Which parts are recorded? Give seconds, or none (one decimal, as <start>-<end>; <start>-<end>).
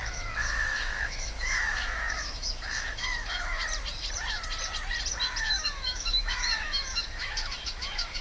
3.6-5.4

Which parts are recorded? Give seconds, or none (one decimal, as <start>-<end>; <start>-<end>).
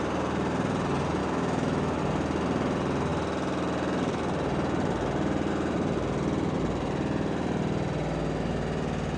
0.0-1.2; 2.0-9.2